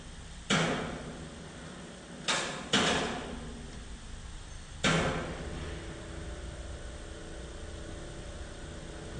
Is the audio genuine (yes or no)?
yes